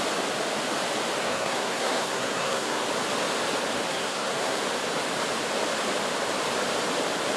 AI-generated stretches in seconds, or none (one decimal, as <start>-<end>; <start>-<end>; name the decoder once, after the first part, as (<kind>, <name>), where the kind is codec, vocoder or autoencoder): 1.2-2.8 (codec, SNAC); 3.9-4.6